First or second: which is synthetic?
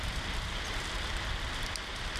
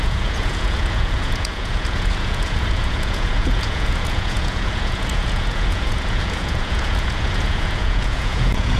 second